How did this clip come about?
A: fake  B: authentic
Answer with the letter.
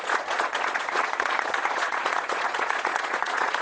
A